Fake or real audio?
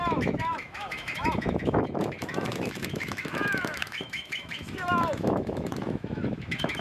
fake